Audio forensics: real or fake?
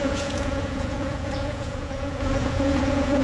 fake